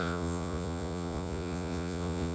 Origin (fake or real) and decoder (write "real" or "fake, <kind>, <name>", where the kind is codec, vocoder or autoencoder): fake, vocoder, Vocos